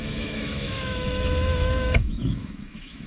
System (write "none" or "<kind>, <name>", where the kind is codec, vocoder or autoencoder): autoencoder, DAC-VAE